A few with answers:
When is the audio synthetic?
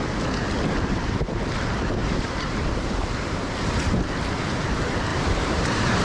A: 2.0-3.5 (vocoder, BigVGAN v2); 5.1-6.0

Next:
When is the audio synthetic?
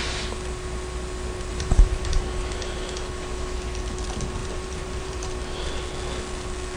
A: 1.5-2.2 (vocoder, BigVGAN v2); 4.4-5.3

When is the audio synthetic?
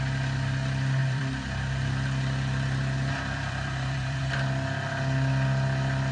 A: 1.0-4.2 (vocoder, BigVGAN v2)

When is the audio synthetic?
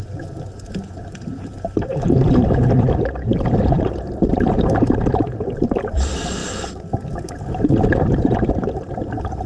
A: 0.0-6.4 (vocoder, BigVGAN v2); 8.1-9.5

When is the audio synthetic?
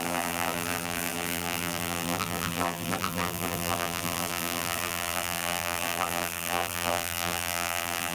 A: 0.0-8.1 (vocoder, BigVGAN v2)